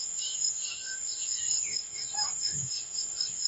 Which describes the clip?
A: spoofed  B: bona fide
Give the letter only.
A